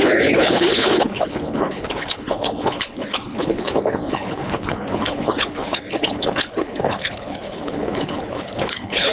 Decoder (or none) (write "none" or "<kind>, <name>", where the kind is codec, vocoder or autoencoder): codec, HILCodec